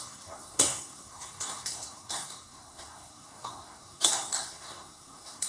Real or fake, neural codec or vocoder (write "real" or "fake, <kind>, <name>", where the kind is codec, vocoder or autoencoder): fake, codec, SNAC